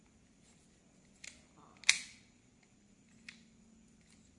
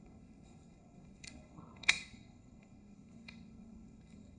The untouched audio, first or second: first